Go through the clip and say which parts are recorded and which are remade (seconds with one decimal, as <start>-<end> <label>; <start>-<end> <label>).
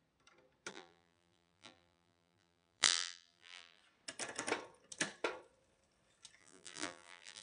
0.0-0.7 recorded; 0.7-3.8 remade; 3.8-6.4 recorded; 6.4-7.4 remade